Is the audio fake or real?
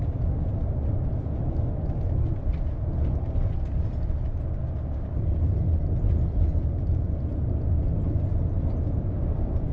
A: real